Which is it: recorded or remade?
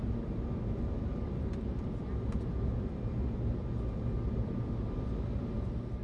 recorded